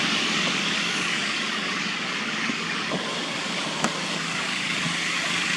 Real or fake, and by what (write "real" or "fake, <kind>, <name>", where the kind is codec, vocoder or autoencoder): fake, codec, DAC